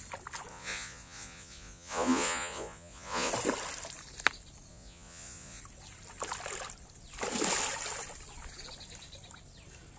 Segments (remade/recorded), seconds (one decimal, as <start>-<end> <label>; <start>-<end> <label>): 0.0-0.5 recorded; 0.5-3.3 remade; 3.3-4.7 recorded; 4.7-5.6 remade; 5.6-10.0 recorded